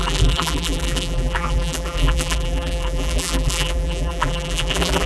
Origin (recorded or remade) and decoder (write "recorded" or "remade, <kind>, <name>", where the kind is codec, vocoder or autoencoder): remade, vocoder, BigVGAN v2